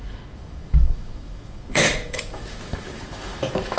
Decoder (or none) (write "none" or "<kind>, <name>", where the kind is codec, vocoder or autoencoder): autoencoder, DAC-VAE